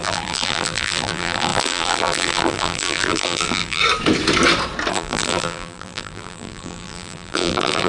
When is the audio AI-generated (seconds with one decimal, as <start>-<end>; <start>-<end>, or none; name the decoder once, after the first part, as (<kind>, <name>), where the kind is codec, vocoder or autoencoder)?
0.0-3.8 (vocoder, BigVGAN v2); 4.9-7.9